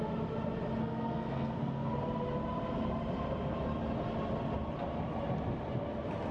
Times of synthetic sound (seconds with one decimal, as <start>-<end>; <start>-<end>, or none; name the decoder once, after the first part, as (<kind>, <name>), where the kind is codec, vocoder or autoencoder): 0.8-1.9 (codec, SNAC)